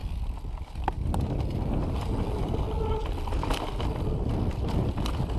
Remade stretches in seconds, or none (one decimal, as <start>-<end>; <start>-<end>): none